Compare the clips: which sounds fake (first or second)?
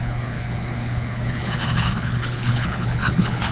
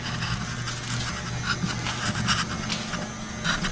first